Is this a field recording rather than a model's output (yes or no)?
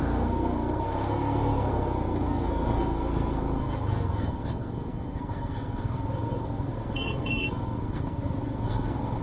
no